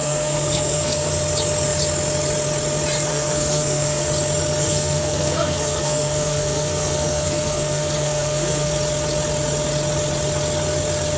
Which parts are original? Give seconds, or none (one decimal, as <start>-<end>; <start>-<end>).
1.1-3.1; 4.1-4.6; 8.7-11.2